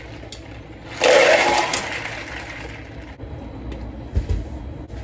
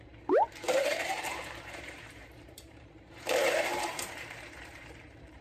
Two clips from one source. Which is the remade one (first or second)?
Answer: second